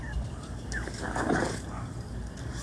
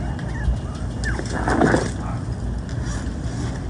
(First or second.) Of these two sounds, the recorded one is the second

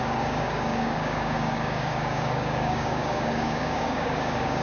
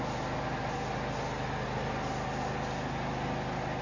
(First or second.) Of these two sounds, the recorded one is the second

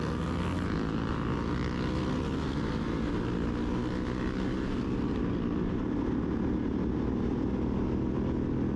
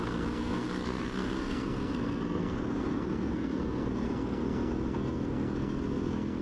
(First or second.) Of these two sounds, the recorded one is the first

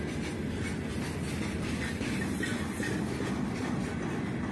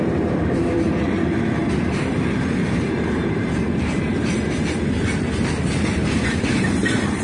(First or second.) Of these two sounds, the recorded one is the first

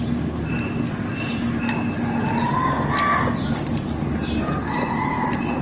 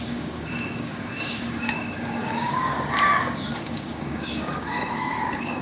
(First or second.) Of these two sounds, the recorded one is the first